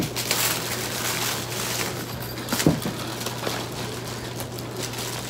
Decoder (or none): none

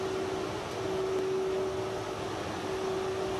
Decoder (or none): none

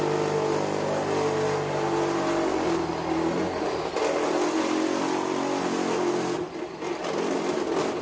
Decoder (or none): none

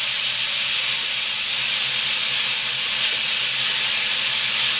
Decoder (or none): none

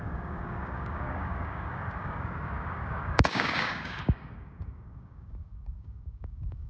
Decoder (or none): codec, DAC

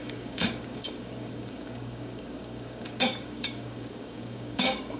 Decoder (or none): codec, DAC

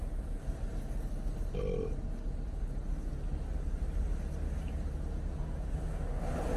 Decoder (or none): none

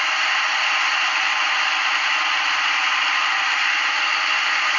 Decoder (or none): none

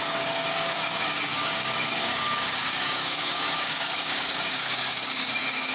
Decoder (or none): codec, DAC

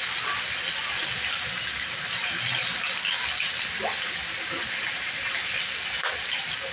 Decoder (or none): none